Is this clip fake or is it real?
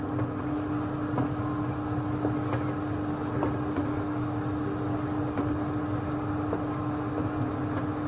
real